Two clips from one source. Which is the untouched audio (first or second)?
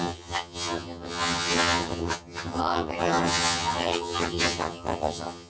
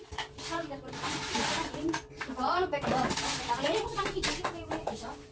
second